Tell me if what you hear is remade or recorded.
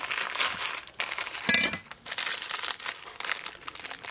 recorded